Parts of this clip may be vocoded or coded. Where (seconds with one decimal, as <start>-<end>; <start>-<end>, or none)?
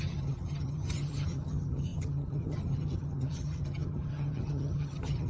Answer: 0.0-5.3